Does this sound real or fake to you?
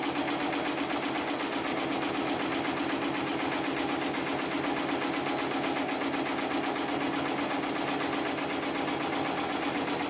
real